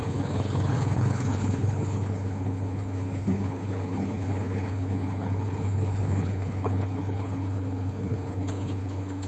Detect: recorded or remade remade